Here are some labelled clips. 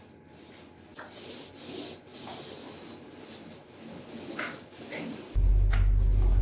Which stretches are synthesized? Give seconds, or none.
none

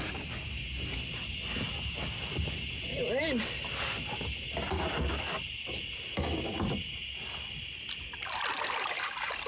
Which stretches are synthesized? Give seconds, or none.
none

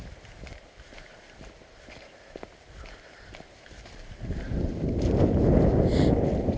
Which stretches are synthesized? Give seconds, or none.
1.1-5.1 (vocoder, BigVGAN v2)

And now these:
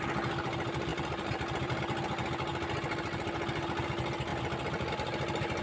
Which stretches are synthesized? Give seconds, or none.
0.9-1.8 (vocoder, BigVGAN v2); 4.3-4.9

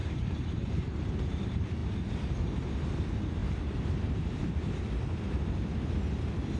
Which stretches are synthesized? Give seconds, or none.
0.0-1.1 (vocoder, BigVGAN v2); 3.4-4.8

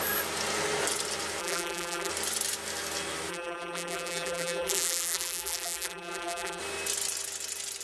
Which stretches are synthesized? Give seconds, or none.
1.4-2.1 (vocoder, BigVGAN v2); 3.3-6.6

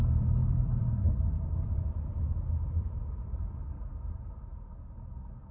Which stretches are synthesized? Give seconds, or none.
0.4-1.9 (vocoder, BigVGAN v2)

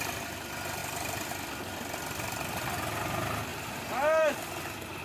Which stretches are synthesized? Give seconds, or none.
0.8-1.3 (vocoder, BigVGAN v2); 3.5-5.0